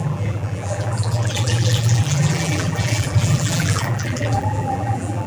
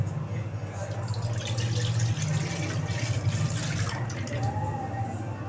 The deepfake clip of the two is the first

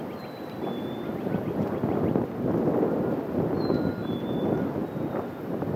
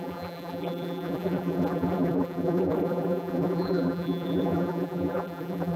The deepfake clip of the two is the second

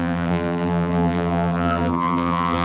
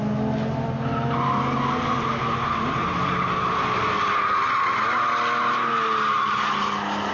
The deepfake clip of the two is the first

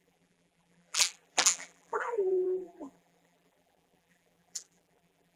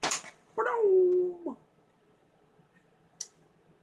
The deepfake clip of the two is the first